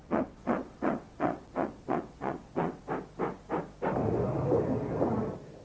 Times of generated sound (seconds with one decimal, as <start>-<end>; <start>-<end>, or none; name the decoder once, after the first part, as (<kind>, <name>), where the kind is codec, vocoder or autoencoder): 0.0-2.8 (vocoder, WaveNeXt)